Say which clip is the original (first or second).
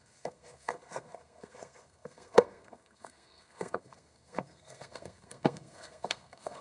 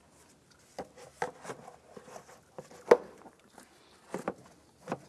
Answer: second